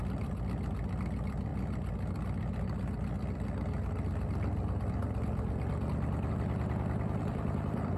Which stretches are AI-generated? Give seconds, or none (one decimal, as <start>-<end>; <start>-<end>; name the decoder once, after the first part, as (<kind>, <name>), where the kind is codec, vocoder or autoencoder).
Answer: 0.0-1.5 (vocoder, BigVGAN v2); 6.3-8.0